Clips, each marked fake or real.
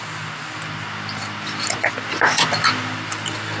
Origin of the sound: real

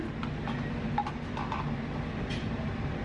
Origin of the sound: real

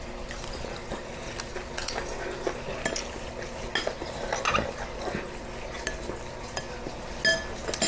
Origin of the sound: real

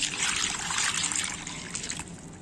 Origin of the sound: real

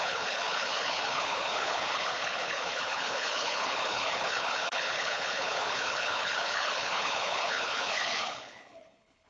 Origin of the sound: fake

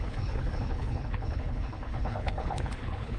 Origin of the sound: fake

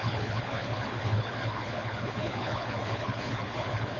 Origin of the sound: fake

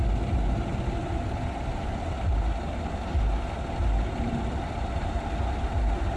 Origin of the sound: real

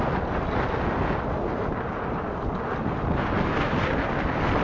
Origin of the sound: real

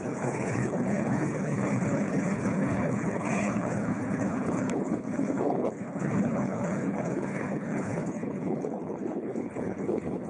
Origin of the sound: fake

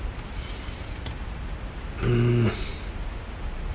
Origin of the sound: real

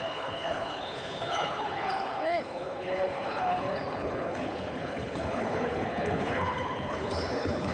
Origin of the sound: fake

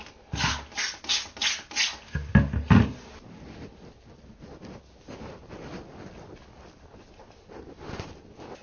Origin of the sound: real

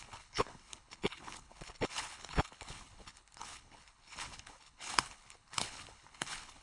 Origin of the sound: fake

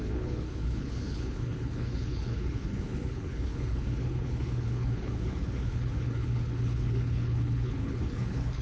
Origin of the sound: fake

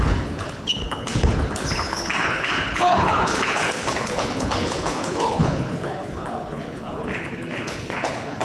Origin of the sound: fake